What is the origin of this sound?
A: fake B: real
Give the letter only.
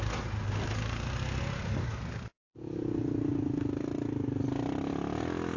B